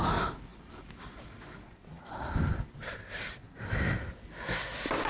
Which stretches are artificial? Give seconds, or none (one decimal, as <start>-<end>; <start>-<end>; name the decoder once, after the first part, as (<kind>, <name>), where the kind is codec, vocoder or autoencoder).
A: 0.5-3.4 (vocoder, BigVGAN v2)